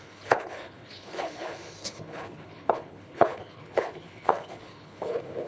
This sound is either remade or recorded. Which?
remade